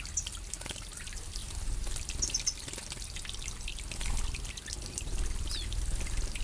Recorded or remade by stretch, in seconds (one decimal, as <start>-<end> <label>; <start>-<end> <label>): 0.0-6.4 recorded